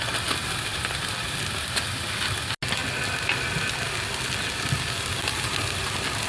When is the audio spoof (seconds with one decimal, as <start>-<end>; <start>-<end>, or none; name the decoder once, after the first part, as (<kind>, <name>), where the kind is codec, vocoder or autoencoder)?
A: none